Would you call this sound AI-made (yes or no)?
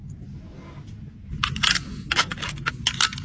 no